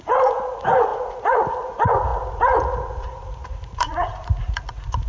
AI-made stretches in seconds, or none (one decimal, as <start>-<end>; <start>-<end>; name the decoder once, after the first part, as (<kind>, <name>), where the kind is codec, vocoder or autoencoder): 0.0-5.1 (vocoder, Vocos)